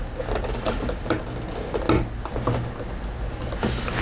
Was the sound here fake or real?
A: real